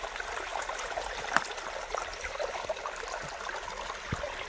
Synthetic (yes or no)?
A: no